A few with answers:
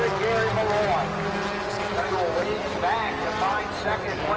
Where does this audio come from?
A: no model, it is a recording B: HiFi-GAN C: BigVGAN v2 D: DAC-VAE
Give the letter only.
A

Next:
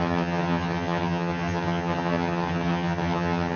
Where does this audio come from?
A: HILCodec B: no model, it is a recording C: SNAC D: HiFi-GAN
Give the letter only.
D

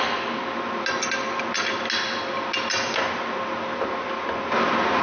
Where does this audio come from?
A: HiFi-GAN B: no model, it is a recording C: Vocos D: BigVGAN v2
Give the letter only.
B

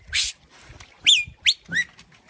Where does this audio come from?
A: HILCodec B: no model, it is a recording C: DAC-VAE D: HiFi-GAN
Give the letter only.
B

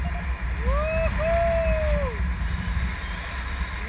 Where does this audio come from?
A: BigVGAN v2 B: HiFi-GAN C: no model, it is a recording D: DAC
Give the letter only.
C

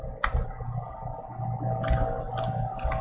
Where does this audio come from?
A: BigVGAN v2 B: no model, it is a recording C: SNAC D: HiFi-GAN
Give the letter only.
B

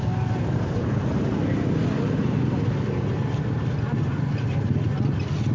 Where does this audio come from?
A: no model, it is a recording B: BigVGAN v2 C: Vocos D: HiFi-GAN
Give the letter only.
A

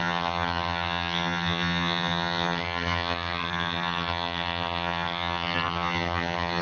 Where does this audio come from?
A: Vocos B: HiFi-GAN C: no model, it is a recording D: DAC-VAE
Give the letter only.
B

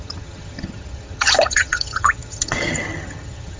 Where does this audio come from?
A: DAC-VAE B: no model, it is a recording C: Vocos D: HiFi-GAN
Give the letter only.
D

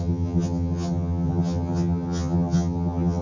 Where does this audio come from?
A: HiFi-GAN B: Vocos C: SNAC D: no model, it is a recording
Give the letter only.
A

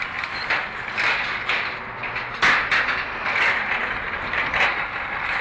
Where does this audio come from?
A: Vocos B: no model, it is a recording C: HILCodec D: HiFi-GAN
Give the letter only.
B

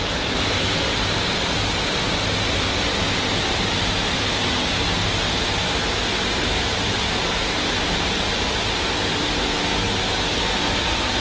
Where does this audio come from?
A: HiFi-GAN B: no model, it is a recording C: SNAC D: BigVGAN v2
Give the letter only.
B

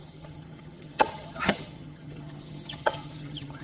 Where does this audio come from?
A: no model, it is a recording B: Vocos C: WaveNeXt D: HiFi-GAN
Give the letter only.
D